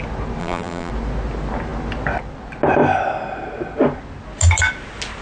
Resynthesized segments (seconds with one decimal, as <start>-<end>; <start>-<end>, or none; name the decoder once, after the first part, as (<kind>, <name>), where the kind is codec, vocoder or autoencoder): 0.4-0.9 (vocoder, BigVGAN v2)